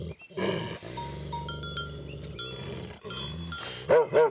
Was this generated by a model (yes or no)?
no